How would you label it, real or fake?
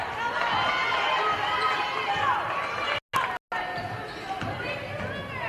real